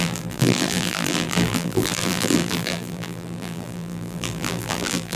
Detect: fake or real fake